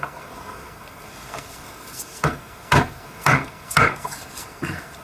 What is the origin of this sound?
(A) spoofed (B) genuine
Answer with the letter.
A